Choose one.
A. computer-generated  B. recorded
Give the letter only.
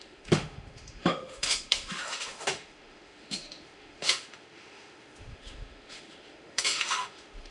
A